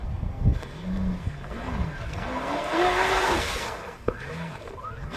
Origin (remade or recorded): remade